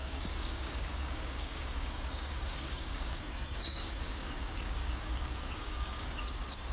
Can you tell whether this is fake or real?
fake